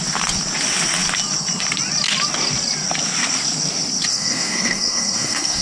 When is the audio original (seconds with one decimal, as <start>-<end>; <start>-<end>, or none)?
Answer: 0.0-4.1